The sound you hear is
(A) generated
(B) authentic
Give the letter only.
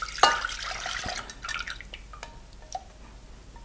B